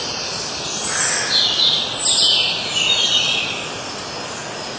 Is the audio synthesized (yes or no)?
no